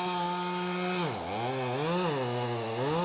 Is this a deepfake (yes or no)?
no